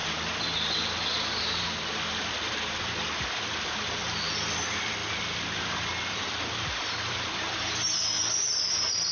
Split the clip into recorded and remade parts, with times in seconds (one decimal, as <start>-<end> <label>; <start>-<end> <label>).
0.0-9.1 recorded